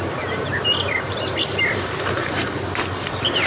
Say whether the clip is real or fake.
fake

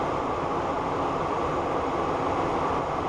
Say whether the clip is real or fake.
real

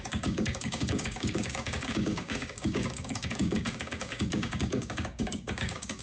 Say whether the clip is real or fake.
fake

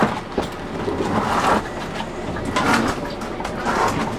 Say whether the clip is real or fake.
real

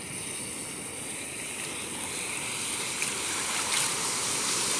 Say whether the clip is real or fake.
real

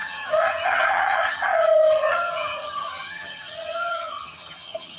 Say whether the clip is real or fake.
fake